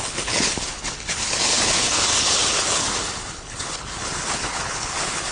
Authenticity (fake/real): fake